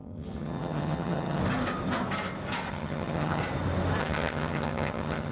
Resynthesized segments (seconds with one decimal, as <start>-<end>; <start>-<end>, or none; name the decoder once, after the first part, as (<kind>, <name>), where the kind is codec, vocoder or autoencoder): 0.0-1.4 (vocoder, HiFi-GAN); 2.7-3.4; 4.0-5.3